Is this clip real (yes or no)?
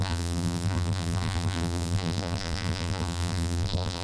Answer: no